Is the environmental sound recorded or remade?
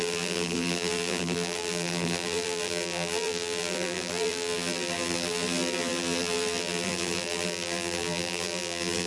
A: remade